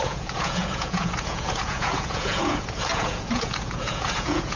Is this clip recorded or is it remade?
remade